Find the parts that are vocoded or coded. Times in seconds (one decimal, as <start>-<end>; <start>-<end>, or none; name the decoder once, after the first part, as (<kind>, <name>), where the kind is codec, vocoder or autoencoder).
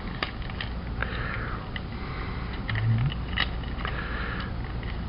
none